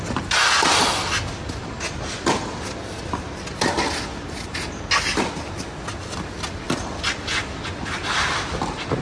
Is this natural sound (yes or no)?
yes